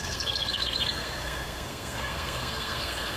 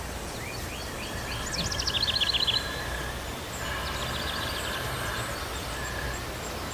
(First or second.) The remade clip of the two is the first